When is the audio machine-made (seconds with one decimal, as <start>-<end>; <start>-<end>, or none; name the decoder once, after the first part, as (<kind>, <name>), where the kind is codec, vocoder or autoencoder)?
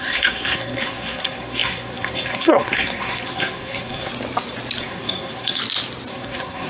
0.0-4.1 (codec, SNAC); 4.8-5.6; 6.1-6.7